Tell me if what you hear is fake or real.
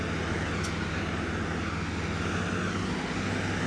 real